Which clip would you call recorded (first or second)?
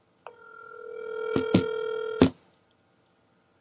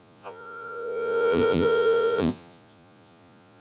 first